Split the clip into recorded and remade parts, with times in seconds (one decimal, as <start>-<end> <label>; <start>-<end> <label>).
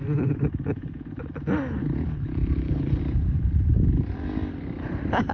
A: 0.0-1.8 recorded; 1.8-3.0 remade; 3.0-5.3 recorded